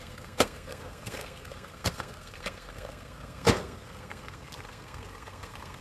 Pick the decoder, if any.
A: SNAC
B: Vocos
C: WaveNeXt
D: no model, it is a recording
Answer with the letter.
A